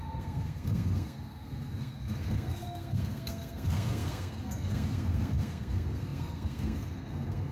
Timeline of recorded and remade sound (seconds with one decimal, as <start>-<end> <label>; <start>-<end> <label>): 0.0-7.5 remade